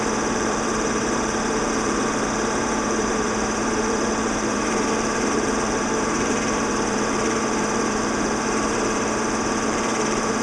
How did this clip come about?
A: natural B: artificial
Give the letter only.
B